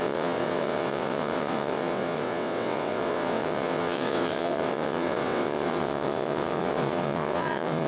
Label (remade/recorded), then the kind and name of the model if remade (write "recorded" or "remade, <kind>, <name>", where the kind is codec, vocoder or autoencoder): remade, vocoder, WaveNeXt